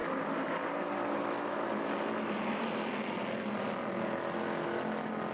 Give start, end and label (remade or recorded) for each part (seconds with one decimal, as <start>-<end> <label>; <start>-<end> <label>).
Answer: 0.0-5.3 recorded